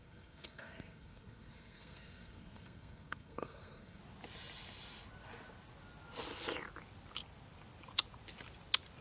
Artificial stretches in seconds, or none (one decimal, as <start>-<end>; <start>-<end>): 0.0-4.0